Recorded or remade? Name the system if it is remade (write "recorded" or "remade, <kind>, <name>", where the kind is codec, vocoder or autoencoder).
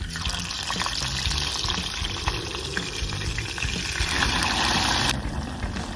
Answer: recorded